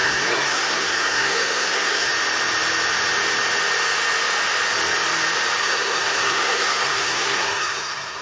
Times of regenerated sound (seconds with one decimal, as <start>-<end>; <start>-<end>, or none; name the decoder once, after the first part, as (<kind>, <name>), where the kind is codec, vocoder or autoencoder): 0.0-2.1 (codec, SNAC); 5.6-8.2

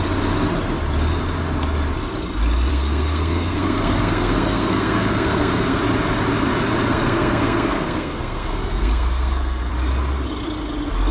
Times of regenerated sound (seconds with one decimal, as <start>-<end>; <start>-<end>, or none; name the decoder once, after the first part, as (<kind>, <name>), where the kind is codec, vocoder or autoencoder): 2.7-5.8 (codec, SNAC); 6.9-9.7

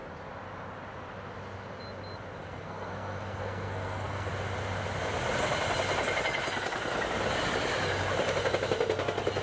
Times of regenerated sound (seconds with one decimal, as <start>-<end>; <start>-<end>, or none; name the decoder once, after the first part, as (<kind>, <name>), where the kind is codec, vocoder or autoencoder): 2.4-4.3 (codec, SNAC)

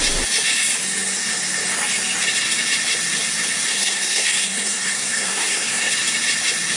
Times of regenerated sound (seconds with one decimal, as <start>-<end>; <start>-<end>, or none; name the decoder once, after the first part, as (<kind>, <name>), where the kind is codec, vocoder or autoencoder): 3.7-5.9 (codec, SNAC)

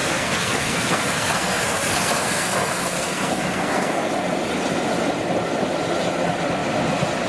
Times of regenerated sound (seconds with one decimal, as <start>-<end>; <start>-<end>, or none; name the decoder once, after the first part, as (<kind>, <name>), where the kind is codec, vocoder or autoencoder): 0.0-4.1 (codec, SNAC)

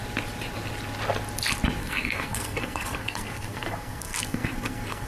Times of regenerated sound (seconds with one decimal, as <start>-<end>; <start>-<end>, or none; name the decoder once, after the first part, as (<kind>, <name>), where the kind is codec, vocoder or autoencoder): 1.8-5.1 (codec, SNAC)

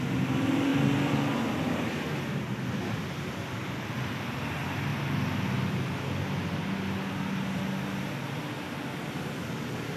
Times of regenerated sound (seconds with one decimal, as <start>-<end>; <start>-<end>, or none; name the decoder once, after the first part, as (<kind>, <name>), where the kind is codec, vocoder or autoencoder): none

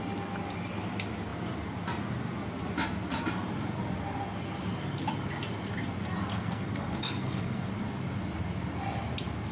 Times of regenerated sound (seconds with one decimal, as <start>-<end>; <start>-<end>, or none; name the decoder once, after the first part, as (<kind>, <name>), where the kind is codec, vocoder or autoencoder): 6.3-7.7 (codec, SNAC)